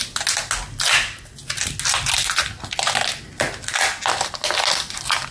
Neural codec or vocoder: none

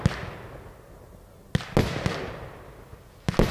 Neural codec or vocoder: none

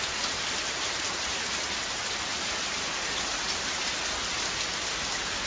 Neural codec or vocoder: none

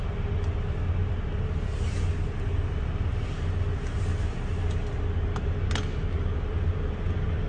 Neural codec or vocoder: none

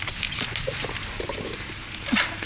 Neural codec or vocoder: none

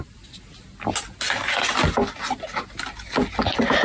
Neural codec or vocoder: none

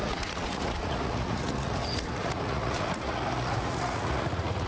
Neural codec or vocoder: vocoder, Vocos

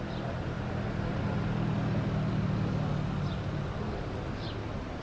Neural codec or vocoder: none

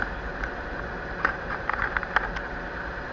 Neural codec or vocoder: none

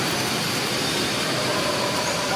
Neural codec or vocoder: none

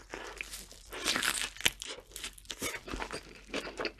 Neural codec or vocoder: none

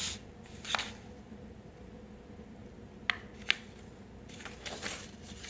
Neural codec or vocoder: none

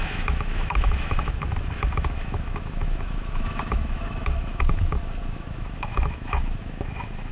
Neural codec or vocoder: autoencoder, DAC-VAE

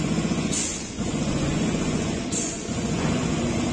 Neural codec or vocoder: vocoder, Vocos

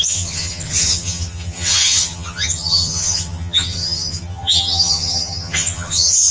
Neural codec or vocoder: vocoder, HiFi-GAN